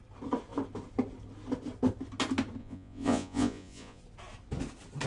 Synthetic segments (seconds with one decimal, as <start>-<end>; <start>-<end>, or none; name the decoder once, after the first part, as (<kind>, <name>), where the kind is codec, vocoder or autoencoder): 2.6-4.0 (vocoder, Vocos)

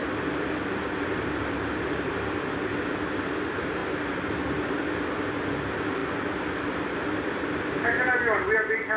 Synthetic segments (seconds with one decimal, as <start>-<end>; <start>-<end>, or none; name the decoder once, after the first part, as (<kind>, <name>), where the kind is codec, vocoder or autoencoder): none

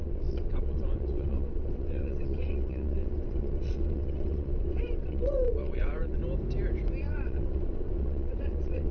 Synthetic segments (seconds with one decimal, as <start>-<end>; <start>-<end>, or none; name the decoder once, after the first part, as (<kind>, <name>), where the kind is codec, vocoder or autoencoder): 0.0-6.2 (vocoder, WaveNeXt); 7.0-8.9

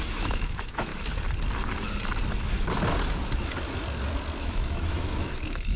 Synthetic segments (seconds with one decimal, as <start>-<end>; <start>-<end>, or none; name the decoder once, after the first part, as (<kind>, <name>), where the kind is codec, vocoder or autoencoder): 0.0-0.9 (autoencoder, DAC-VAE); 4.4-5.8

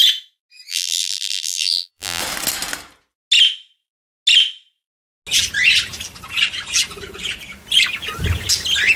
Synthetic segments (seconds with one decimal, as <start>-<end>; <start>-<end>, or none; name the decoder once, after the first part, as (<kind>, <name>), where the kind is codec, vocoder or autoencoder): 0.7-2.2 (vocoder, BigVGAN v2)

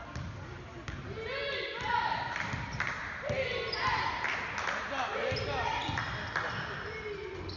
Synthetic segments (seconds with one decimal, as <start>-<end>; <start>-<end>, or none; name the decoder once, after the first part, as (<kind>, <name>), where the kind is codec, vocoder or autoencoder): none